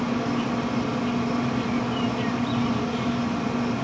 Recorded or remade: recorded